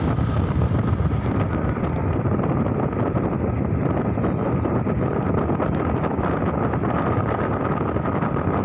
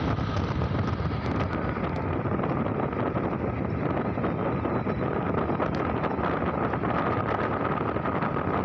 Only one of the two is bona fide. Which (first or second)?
second